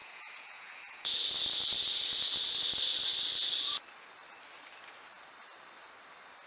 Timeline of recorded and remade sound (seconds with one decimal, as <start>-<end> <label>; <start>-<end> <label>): 0.0-1.1 remade; 1.1-6.5 recorded